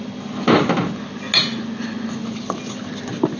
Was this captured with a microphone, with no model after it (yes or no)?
yes